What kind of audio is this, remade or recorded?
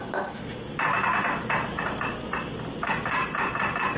recorded